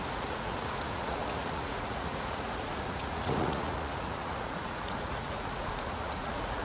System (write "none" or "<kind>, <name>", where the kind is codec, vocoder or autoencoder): vocoder, Vocos